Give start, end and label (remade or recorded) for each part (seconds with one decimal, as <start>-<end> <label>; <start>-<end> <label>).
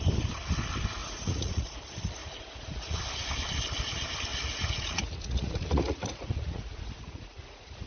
0.0-1.0 recorded; 1.0-1.8 remade; 1.8-2.2 recorded; 2.2-3.0 remade; 3.0-4.3 recorded; 4.3-7.9 remade